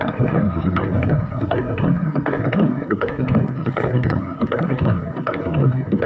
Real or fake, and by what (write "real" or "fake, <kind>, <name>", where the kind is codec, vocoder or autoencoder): fake, codec, SNAC